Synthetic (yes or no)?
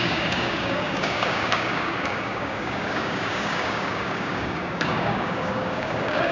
yes